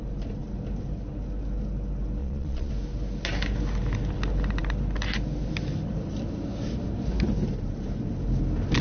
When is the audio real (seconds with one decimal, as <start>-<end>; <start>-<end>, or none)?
0.0-2.2; 2.7-8.8